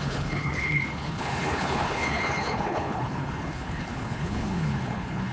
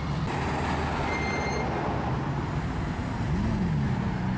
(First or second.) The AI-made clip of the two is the first